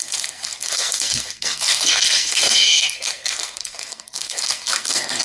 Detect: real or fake fake